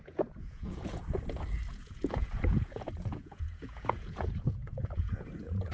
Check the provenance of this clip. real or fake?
fake